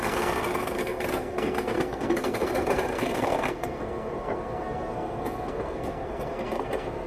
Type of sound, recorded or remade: remade